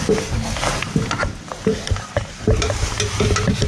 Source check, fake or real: real